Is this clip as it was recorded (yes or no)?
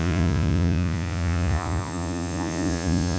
no